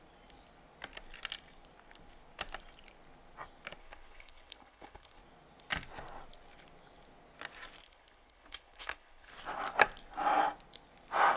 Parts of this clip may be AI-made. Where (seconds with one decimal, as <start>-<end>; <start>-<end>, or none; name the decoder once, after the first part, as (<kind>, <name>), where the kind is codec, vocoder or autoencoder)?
3.8-5.2 (codec, HILCodec); 7.8-9.3